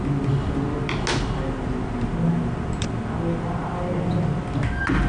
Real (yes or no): yes